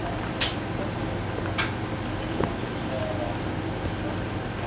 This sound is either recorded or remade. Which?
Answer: recorded